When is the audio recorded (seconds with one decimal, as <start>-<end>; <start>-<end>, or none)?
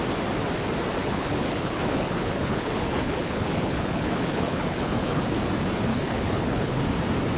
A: 0.0-1.0; 5.2-5.9; 6.8-7.4